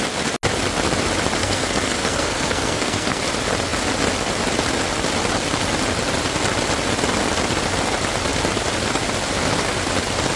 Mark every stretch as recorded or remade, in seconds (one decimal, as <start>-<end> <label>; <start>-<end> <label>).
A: 0.0-1.4 recorded; 1.4-3.2 remade; 3.2-10.4 recorded